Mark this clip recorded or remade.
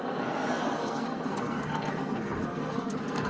remade